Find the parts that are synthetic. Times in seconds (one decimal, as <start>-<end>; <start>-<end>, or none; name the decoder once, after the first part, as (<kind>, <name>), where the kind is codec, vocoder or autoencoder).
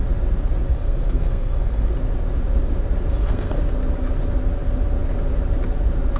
0.7-1.9 (codec, SNAC); 3.1-3.6